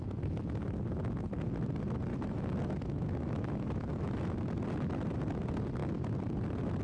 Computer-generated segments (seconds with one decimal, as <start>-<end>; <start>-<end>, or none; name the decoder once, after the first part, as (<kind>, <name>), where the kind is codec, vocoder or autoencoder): 2.1-4.4 (autoencoder, DAC-VAE)